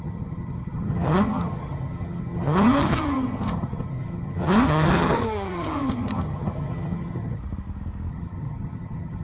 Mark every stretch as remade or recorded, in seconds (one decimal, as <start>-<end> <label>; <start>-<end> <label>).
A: 0.0-7.4 remade; 7.4-8.1 recorded; 8.1-9.2 remade